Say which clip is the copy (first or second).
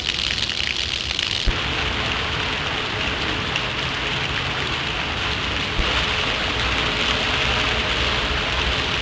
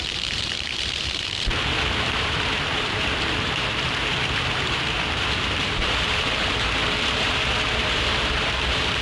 second